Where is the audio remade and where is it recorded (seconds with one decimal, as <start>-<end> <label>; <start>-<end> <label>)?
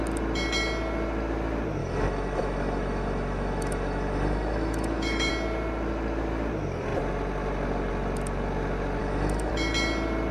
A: 0.0-1.8 recorded; 1.8-5.3 remade; 5.3-9.0 recorded; 9.0-9.5 remade; 9.5-10.3 recorded